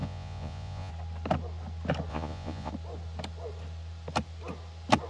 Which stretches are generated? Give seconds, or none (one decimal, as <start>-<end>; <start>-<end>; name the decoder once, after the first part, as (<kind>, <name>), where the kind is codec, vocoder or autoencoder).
0.0-0.9 (vocoder, Vocos); 2.1-2.7